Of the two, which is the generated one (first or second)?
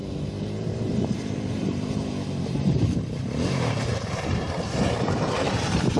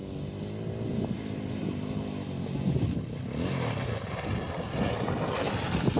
first